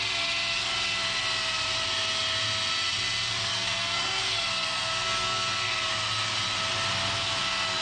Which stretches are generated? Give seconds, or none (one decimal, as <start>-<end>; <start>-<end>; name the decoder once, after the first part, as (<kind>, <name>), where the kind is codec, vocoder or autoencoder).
3.5-5.7 (codec, SNAC)